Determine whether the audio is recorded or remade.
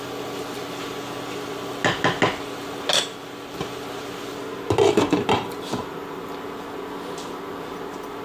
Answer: recorded